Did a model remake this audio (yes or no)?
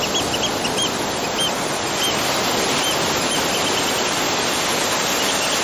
no